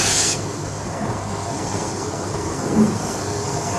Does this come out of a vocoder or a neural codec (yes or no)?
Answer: yes